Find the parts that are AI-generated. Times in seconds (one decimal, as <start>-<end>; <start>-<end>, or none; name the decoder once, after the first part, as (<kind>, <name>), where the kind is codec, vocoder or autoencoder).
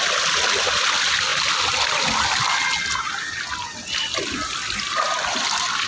none